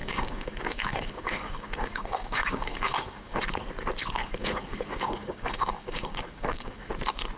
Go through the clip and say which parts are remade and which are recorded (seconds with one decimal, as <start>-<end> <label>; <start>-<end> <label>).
0.0-3.4 remade; 3.4-4.2 recorded; 4.2-6.9 remade; 6.9-7.4 recorded